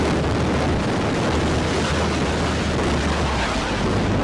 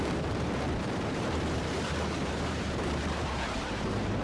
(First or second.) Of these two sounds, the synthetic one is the second